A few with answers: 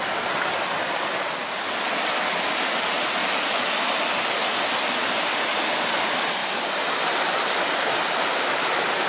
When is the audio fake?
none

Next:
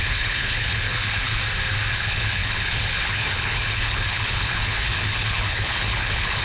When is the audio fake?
0.0-1.4 (codec, HILCodec); 1.9-6.4

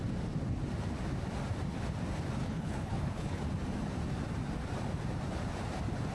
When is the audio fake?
2.4-3.4 (codec, HILCodec)

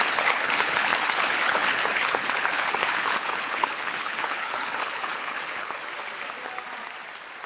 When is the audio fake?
0.0-5.8 (codec, HILCodec)

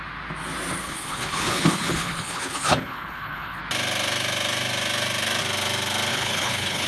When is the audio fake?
0.8-3.6 (codec, HILCodec); 6.1-6.9

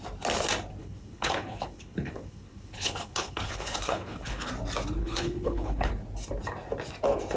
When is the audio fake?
0.8-4.5 (codec, HILCodec); 5.0-5.9